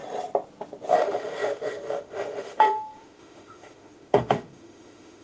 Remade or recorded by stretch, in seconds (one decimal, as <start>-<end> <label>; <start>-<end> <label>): 0.0-0.9 recorded; 0.9-5.2 remade